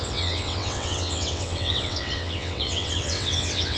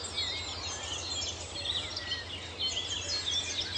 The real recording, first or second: second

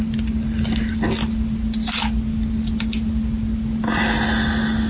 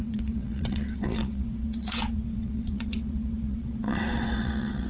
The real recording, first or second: first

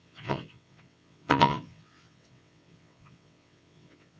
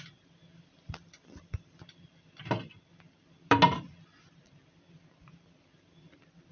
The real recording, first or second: second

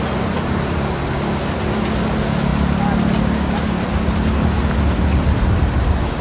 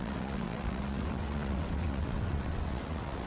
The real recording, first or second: first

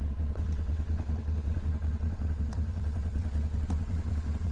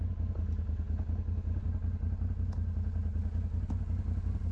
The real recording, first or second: second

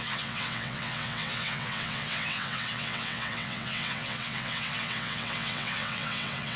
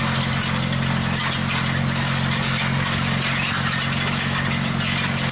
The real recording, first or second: second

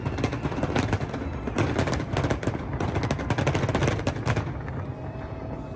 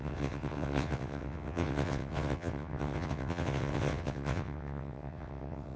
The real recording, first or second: first